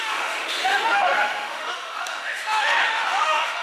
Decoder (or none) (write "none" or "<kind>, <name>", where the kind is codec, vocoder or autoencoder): autoencoder, DAC-VAE